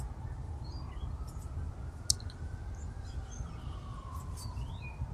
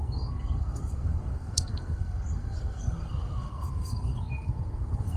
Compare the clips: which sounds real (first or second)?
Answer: first